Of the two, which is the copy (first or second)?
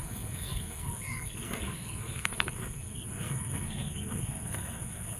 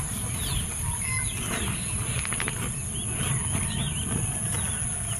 first